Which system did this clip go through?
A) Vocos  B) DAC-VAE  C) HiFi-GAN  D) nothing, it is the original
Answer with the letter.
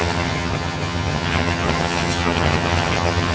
C